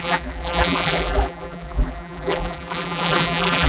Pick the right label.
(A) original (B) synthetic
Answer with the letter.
B